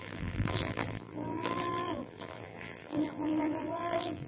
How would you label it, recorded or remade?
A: remade